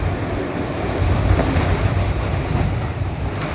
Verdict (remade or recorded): recorded